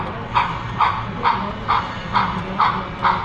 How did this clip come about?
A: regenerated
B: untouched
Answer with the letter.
B